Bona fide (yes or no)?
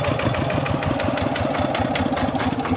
yes